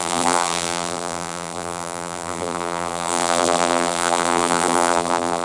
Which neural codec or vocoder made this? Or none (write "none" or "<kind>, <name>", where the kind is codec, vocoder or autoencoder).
vocoder, BigVGAN v2